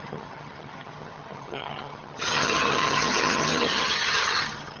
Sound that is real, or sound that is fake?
fake